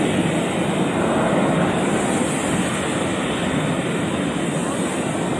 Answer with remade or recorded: recorded